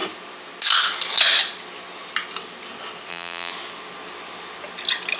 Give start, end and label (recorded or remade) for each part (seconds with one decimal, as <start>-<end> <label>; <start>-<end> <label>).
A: 0.0-3.1 recorded; 3.1-3.5 remade; 3.5-5.2 recorded

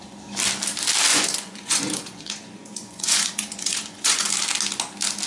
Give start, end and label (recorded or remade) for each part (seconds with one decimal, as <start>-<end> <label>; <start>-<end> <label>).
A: 0.0-1.1 recorded; 1.1-4.3 remade; 4.3-5.3 recorded

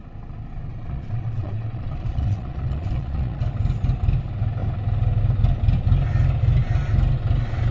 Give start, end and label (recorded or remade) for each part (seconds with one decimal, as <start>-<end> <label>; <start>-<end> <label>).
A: 0.0-0.7 recorded; 0.7-3.4 remade; 3.4-7.7 recorded

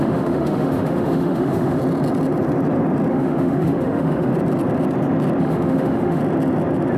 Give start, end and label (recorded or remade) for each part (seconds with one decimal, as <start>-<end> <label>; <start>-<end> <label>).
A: 0.0-1.8 remade; 1.8-3.1 recorded; 3.1-4.3 remade; 4.3-5.4 recorded; 5.4-6.2 remade; 6.2-7.0 recorded